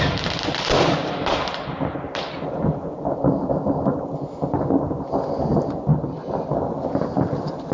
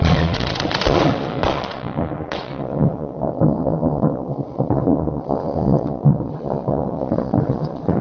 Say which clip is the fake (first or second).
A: second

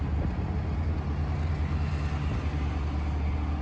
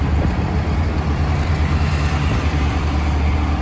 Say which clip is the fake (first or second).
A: second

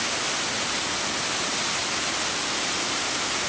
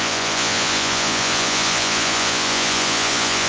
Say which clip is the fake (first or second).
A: second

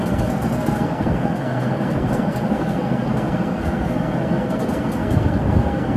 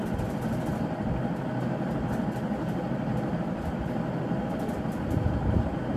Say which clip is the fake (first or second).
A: first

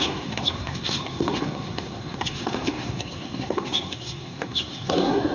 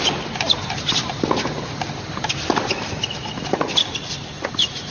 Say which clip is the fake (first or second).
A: first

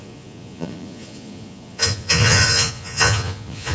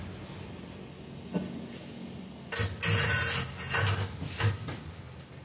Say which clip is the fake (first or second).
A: first